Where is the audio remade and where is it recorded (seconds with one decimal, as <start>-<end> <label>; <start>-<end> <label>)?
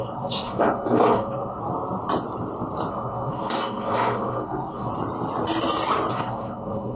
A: 0.0-1.6 remade; 1.6-2.9 recorded; 2.9-4.9 remade; 4.9-6.1 recorded; 6.1-7.0 remade